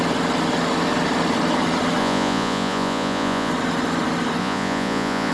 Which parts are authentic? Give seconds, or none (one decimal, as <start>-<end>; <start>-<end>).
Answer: 0.0-2.0; 3.5-4.4